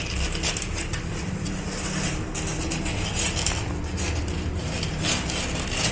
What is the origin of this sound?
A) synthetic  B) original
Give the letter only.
B